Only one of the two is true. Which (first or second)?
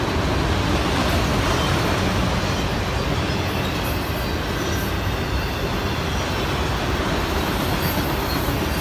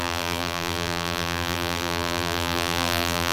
first